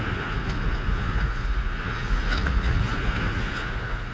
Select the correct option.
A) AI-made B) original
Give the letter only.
A